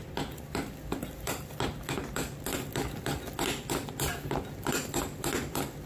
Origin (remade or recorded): recorded